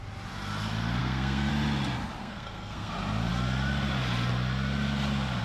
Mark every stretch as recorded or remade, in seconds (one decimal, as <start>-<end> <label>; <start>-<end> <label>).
0.0-1.0 recorded; 1.0-1.5 remade; 1.5-2.2 recorded; 2.2-2.9 remade; 2.9-5.4 recorded